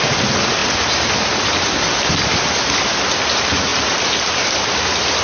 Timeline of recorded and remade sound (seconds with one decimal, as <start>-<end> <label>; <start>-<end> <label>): 0.0-5.2 recorded